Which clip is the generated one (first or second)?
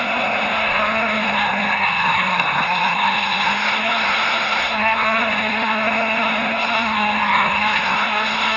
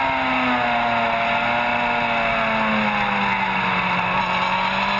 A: first